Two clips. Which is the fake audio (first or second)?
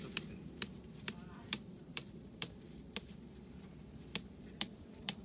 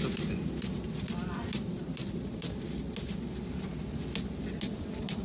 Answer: first